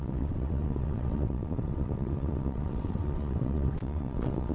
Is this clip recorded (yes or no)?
no